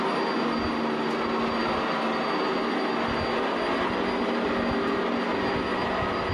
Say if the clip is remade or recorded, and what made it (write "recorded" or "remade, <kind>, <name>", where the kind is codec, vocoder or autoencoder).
recorded